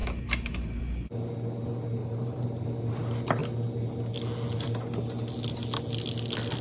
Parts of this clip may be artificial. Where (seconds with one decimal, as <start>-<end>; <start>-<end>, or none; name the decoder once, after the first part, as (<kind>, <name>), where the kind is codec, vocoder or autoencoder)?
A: 0.0-0.8 (vocoder, BigVGAN v2); 2.0-2.7